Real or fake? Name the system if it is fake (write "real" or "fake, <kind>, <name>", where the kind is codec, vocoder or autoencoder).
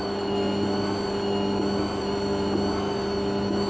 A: real